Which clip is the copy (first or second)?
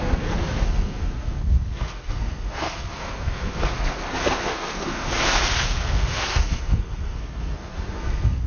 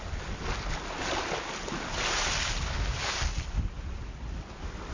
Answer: first